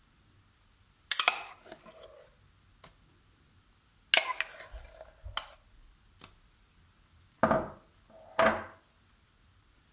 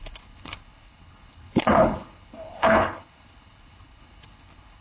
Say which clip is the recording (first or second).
first